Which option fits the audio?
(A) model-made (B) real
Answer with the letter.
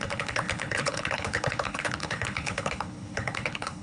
A